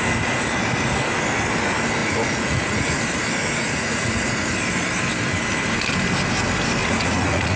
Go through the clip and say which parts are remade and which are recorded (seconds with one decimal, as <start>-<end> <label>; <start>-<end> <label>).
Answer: 0.0-2.0 recorded; 2.0-3.0 remade; 3.0-3.4 recorded; 3.4-4.5 remade; 4.5-6.8 recorded; 6.8-7.6 remade